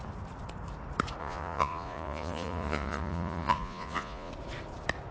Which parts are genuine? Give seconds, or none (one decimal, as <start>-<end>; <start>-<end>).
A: 0.0-1.2; 4.3-5.1